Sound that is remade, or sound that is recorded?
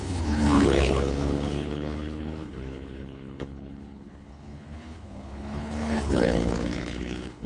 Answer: remade